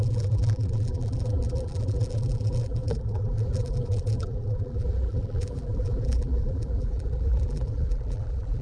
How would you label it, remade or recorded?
remade